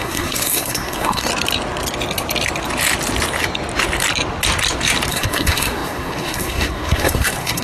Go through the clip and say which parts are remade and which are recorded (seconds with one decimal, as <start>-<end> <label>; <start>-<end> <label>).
0.0-1.3 remade; 1.3-5.1 recorded; 5.1-7.6 remade